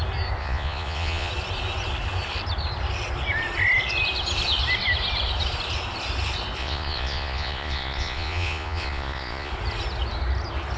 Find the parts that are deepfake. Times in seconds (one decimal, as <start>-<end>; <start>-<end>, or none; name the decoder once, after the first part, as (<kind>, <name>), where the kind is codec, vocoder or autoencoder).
0.4-1.3 (vocoder, Vocos); 6.6-9.5

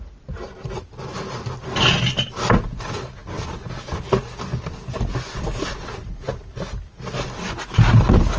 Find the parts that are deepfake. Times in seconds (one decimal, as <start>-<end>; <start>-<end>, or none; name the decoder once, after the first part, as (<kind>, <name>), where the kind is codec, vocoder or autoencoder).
none

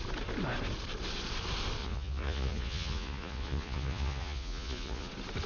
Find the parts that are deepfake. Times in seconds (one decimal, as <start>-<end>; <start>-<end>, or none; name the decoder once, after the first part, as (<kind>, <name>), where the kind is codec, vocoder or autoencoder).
1.8-5.1 (vocoder, Vocos)

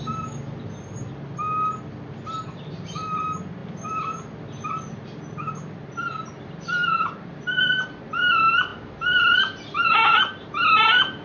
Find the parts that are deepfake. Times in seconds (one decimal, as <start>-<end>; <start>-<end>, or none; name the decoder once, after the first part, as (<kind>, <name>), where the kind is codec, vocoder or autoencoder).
none

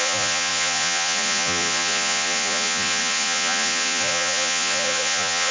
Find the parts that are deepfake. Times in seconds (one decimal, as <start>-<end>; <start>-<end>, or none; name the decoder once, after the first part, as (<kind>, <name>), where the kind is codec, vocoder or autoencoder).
0.0-5.5 (vocoder, Vocos)

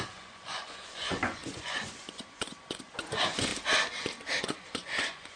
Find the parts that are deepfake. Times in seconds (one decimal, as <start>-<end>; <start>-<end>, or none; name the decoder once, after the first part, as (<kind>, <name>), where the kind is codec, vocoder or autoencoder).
0.0-3.5 (vocoder, Vocos); 4.4-5.4

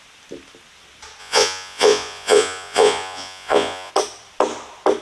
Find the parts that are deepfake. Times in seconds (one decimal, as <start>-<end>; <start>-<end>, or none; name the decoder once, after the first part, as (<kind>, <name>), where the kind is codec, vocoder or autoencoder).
1.2-3.9 (vocoder, Vocos)

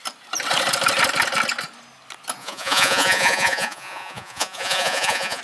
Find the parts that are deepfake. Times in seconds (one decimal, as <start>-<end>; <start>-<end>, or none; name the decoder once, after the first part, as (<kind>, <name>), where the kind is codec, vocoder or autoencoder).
2.4-5.4 (vocoder, Vocos)